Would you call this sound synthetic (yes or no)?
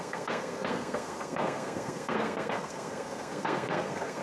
yes